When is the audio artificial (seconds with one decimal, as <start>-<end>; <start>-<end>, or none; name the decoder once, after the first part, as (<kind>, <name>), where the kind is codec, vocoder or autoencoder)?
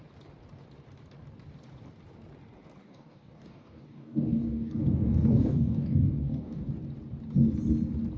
2.8-6.7 (codec, DAC)